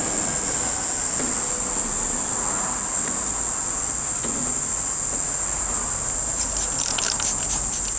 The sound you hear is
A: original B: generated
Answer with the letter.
A